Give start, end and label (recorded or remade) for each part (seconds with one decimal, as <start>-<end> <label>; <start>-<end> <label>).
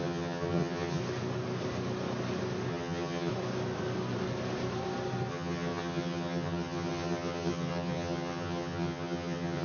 0.0-1.0 remade; 1.0-2.7 recorded; 2.7-3.3 remade; 3.3-5.3 recorded; 5.3-9.6 remade